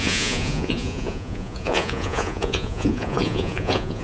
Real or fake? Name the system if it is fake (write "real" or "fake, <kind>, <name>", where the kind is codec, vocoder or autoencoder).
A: fake, vocoder, Vocos